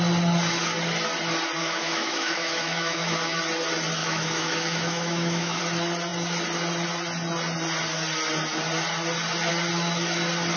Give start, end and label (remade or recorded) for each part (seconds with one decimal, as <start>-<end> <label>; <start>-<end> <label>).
0.0-1.6 recorded; 1.6-3.4 remade; 3.4-4.0 recorded; 4.0-5.6 remade; 5.6-10.6 recorded